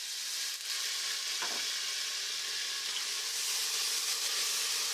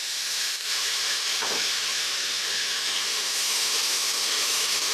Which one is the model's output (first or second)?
second